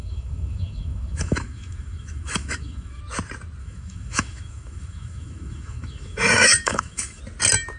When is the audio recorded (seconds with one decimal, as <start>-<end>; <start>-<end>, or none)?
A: 3.0-3.6; 7.2-7.8